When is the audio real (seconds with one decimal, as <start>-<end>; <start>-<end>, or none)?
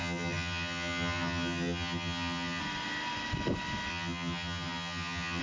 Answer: 2.6-3.9